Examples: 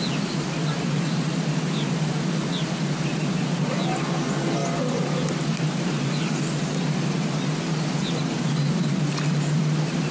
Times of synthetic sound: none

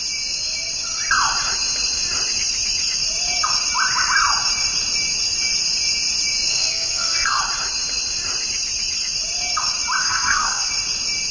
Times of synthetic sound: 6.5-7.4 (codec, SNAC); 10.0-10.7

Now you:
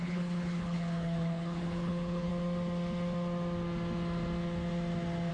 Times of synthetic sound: 0.0-2.3 (codec, HILCodec)

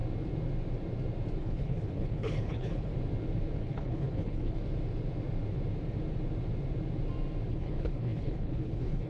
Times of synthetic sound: 1.4-2.9 (codec, HILCodec); 3.6-4.6; 7.5-9.1

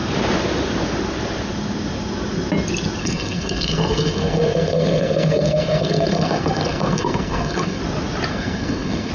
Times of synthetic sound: 3.0-7.8 (codec, SNAC); 8.3-9.1